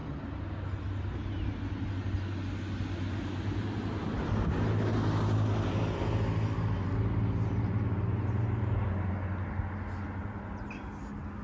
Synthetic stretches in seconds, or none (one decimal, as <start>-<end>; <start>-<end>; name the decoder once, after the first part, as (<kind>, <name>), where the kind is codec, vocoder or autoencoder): none

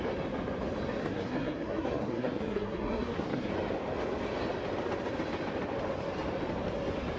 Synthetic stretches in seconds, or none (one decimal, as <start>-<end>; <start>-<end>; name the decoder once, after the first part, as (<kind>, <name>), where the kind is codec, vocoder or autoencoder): 1.0-3.5 (codec, SNAC)

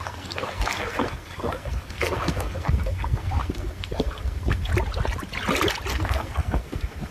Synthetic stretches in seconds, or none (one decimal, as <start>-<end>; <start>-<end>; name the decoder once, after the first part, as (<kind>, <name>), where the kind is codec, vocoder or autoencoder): 0.0-4.7 (codec, SNAC); 5.9-7.1

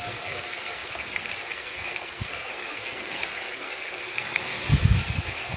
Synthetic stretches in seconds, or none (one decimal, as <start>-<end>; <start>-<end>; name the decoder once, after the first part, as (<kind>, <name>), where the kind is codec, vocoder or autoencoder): 0.0-5.6 (codec, SNAC)

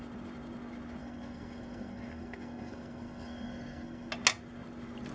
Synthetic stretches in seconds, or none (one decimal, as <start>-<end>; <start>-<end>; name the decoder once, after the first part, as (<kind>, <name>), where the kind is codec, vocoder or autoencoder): 1.0-4.1 (codec, SNAC)